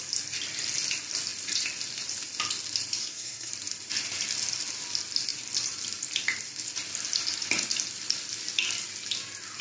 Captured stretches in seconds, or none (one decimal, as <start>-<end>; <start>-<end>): 0.0-3.0; 3.5-9.6